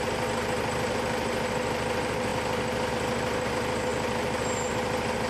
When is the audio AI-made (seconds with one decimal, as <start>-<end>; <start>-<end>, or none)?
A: none